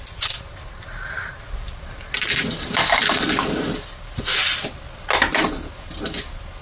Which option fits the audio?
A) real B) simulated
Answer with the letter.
A